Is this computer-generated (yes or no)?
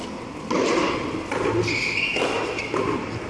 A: no